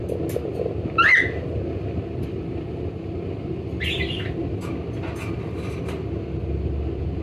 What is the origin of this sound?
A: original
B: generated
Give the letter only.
A